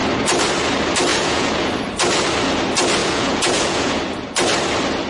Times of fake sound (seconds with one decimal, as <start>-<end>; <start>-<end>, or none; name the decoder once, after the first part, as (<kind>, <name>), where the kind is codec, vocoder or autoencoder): 1.1-1.7 (vocoder, Vocos); 3.0-4.0